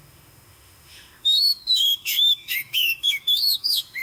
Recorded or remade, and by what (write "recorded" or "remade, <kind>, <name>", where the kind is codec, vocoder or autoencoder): remade, autoencoder, DAC-VAE